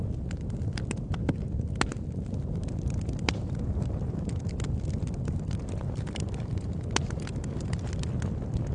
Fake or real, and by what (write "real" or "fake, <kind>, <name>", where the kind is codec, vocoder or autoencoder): real